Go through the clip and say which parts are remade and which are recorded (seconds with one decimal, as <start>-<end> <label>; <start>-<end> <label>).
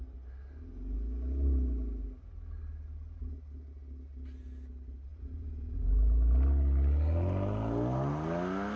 0.0-5.1 recorded; 5.1-5.8 remade; 5.8-8.8 recorded